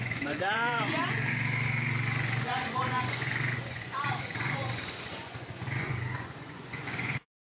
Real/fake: fake